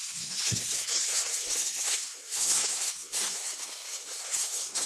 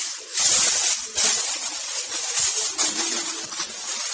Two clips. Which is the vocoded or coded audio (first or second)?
first